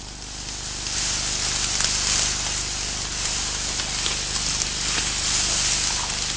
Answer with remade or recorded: recorded